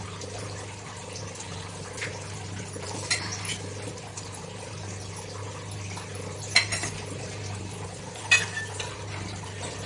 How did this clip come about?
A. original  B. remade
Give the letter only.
A